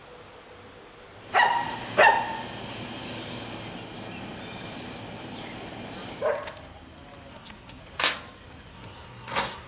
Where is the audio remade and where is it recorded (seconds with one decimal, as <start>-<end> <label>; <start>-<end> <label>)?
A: 0.0-7.3 recorded; 7.3-7.8 remade; 7.8-8.7 recorded; 8.7-9.7 remade